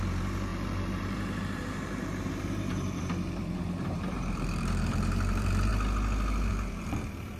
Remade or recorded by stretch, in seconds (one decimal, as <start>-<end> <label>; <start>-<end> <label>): 0.0-5.7 remade; 5.7-6.5 recorded; 6.5-7.4 remade